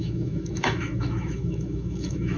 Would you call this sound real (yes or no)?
no